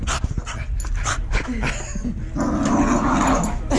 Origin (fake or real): real